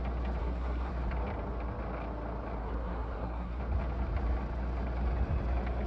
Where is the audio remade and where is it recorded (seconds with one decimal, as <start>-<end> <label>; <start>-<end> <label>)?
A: 0.0-0.4 recorded; 0.4-0.9 remade; 0.9-2.6 recorded; 2.6-3.6 remade; 3.6-5.9 recorded

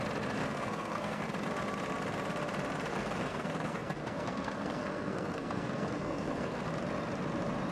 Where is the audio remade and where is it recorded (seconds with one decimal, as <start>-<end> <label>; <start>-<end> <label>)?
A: 0.0-0.4 recorded; 0.4-1.2 remade; 1.2-2.9 recorded; 2.9-6.6 remade; 6.6-7.7 recorded

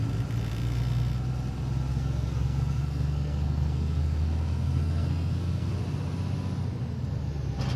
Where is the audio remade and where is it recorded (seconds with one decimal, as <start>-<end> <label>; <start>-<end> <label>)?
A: 0.0-1.9 recorded; 1.9-5.7 remade; 5.7-7.8 recorded

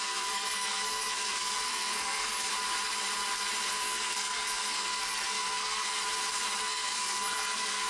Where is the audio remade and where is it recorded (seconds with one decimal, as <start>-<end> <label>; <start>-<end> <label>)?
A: 0.0-2.5 remade; 2.5-3.7 recorded; 3.7-6.0 remade; 6.0-6.6 recorded; 6.6-7.9 remade

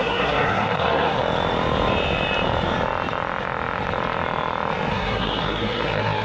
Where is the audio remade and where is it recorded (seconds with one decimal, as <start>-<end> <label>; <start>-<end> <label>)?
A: 0.0-1.2 remade; 1.2-4.9 recorded; 4.9-6.2 remade